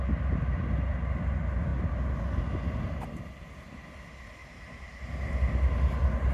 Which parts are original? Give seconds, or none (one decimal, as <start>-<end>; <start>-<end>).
0.0-4.4; 4.9-6.3